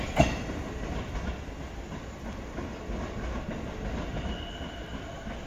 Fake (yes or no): no